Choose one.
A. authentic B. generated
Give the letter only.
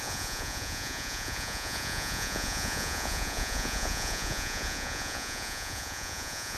B